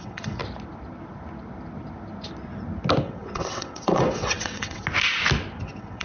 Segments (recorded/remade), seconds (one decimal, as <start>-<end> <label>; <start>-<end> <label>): 0.0-0.4 remade; 0.4-3.0 recorded; 3.0-4.8 remade; 4.8-5.6 recorded; 5.6-6.0 remade